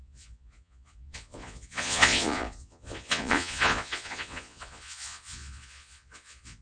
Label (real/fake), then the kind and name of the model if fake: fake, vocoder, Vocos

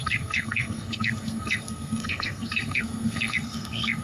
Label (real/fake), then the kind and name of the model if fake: fake, codec, SNAC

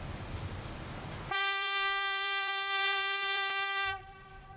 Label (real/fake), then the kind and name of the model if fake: fake, vocoder, BigVGAN v2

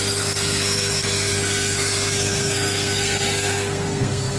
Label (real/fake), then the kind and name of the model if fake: fake, codec, SNAC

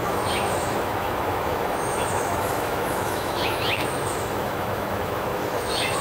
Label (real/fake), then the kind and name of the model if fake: fake, autoencoder, DAC-VAE